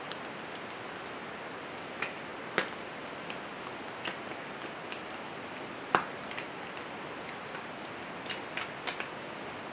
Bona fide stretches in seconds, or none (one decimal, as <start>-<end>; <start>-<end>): 0.0-9.7

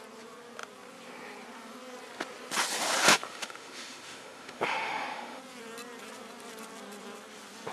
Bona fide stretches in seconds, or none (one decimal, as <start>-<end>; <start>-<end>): 0.0-3.1; 5.4-7.7

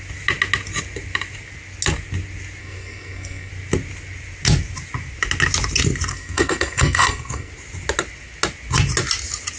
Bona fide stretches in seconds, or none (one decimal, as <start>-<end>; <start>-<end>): 0.0-2.6; 3.5-6.1; 7.5-9.6

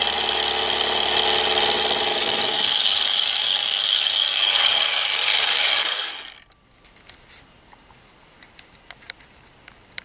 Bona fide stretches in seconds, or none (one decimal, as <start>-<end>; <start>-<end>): 0.0-2.1; 6.1-10.0

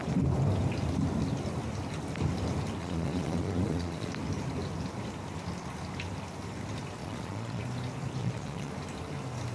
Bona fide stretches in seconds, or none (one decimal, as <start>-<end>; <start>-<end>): 0.0-2.8; 4.1-7.0; 7.6-8.2; 8.7-9.5

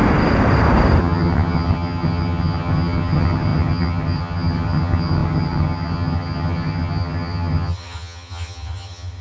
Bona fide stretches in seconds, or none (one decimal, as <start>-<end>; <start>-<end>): 0.0-1.0

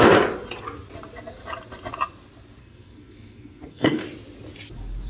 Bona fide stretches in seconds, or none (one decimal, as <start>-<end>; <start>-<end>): 0.0-2.6; 4.0-5.1

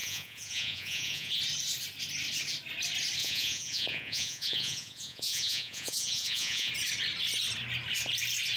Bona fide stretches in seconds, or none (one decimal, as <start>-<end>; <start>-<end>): 1.4-3.2; 6.7-8.6